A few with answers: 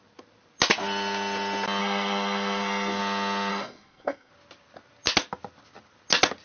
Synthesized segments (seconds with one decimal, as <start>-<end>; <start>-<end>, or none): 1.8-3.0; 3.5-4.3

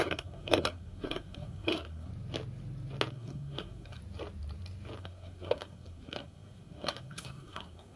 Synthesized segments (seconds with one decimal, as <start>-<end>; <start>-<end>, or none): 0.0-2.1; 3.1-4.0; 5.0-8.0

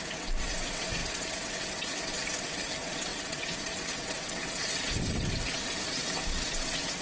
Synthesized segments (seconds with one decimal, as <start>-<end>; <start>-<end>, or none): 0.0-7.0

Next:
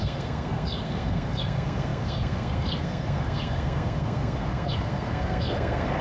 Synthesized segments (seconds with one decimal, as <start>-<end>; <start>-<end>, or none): 0.0-6.0

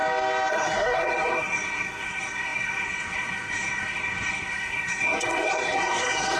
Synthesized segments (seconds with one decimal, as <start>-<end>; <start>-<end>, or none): 0.5-6.4